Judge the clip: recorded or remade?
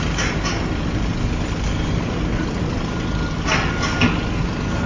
recorded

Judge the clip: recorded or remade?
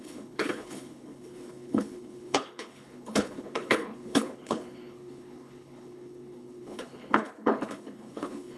remade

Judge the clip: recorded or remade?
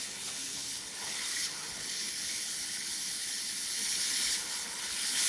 remade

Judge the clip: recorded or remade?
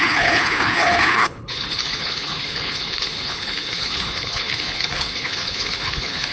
remade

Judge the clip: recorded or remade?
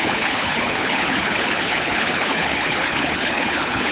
remade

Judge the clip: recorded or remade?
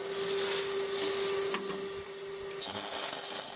recorded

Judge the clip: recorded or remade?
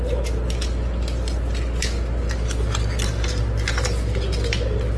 recorded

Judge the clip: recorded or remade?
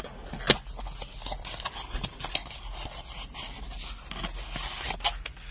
recorded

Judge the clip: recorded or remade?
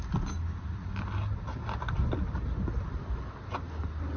recorded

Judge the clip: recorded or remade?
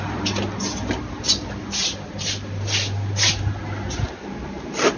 recorded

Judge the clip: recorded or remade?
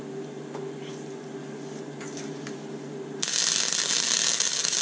recorded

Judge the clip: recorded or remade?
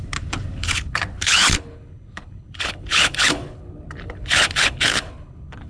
remade